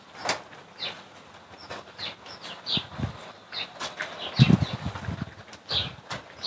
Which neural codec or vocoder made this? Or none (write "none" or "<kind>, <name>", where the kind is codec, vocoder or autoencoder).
none